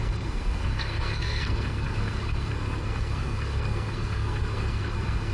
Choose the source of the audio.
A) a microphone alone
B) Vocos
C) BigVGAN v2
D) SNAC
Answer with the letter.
D